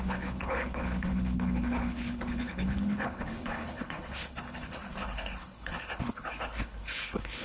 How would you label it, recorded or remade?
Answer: remade